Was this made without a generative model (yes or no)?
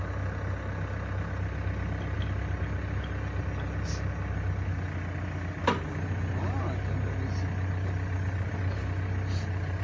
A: yes